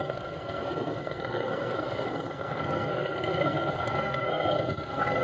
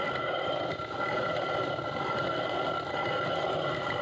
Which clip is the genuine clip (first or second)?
second